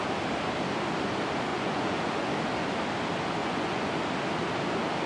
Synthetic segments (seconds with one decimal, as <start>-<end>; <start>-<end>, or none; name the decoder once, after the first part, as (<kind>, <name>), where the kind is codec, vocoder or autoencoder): 1.5-2.3 (vocoder, Vocos); 3.4-3.9

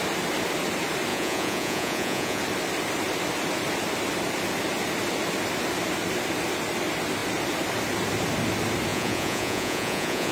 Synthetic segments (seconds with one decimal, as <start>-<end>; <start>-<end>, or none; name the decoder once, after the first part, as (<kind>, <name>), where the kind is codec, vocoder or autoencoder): 1.1-2.4 (vocoder, Vocos); 8.9-10.3

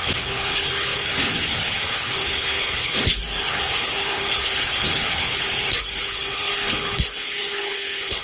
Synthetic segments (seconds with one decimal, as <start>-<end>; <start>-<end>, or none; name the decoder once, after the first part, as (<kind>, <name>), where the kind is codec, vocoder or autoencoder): 0.0-8.2 (codec, HILCodec)